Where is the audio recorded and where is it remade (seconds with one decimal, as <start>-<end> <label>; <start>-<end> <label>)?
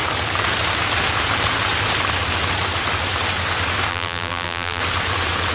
0.0-3.9 recorded; 3.9-4.8 remade; 4.8-5.5 recorded